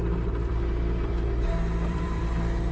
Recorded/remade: remade